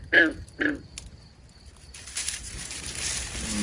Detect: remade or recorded recorded